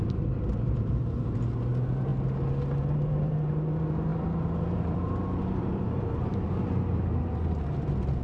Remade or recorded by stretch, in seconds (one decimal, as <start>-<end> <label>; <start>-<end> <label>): 0.0-2.1 remade; 2.1-2.8 recorded; 2.8-8.2 remade